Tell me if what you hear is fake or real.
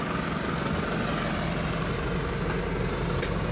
real